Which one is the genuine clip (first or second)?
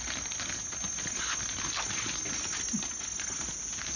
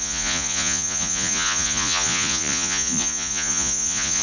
first